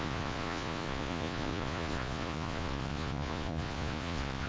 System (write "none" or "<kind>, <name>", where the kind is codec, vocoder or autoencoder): vocoder, Vocos